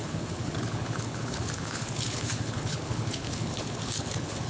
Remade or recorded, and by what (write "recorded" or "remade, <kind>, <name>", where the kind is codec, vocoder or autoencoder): remade, codec, HILCodec